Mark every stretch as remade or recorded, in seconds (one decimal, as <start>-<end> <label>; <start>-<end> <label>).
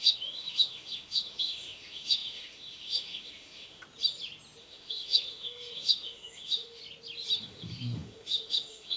0.0-3.8 remade; 3.8-4.6 recorded; 4.6-6.8 remade; 6.8-7.4 recorded; 7.4-9.0 remade